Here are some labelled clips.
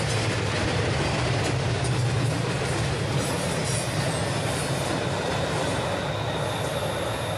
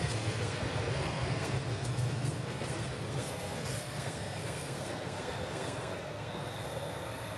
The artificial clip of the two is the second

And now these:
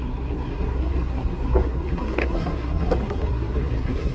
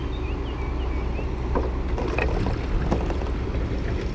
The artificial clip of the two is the first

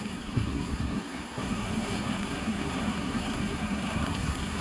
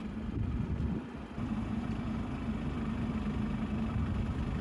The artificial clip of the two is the first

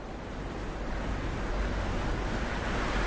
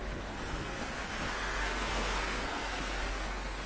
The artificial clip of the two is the second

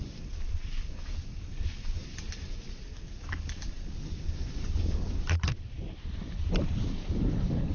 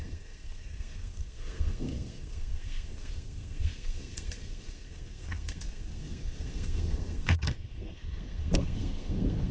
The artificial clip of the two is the second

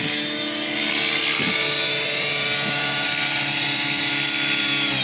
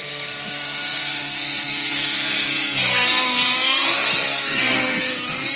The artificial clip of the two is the second